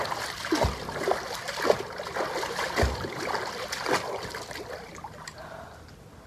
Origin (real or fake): real